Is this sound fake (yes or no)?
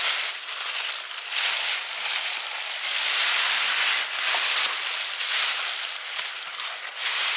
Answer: no